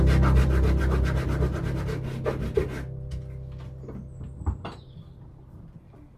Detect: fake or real real